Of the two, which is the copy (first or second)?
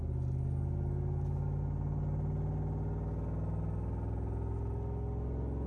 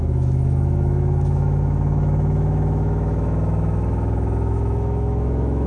second